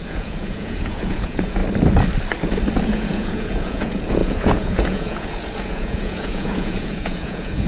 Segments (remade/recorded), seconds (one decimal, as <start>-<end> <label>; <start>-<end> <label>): 0.0-1.6 remade; 1.6-2.9 recorded; 2.9-7.7 remade